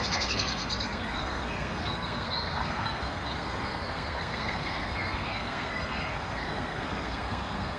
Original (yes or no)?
no